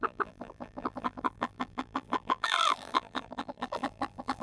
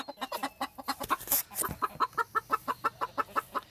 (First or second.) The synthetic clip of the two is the first